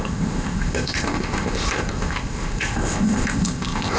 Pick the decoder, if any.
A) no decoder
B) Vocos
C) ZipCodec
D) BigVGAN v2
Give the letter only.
C